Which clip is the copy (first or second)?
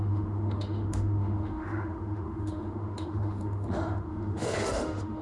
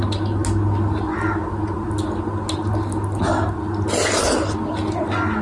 first